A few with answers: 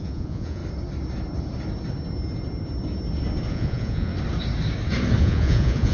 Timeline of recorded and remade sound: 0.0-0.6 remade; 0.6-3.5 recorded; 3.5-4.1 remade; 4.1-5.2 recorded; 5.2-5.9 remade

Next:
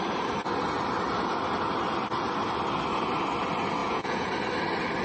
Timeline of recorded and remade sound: 0.0-3.8 recorded; 3.8-4.3 remade; 4.3-5.0 recorded

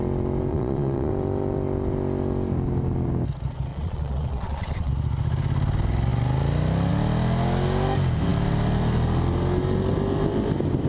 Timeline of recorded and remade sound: 0.0-0.5 recorded; 0.5-1.1 remade; 1.1-3.7 recorded; 3.7-4.9 remade; 4.9-10.9 recorded

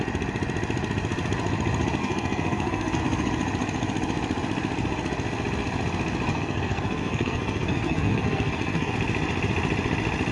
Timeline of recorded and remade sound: 0.0-2.0 recorded; 2.0-3.0 remade; 3.0-6.3 recorded; 6.3-8.9 remade; 8.9-10.3 recorded

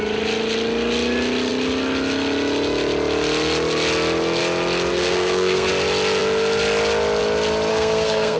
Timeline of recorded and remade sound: 0.0-4.9 recorded; 4.9-5.7 remade; 5.7-7.7 recorded; 7.7-8.4 remade

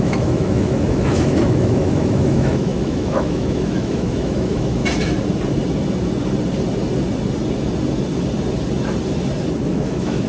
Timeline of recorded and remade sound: 0.0-4.8 remade; 4.8-9.7 recorded; 9.7-10.3 remade

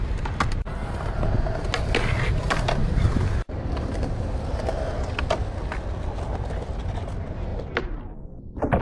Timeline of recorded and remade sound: 0.0-2.8 recorded; 2.8-3.8 remade; 3.8-8.8 recorded